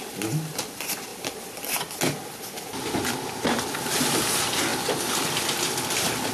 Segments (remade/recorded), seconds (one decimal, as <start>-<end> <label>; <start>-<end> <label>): 0.0-6.3 recorded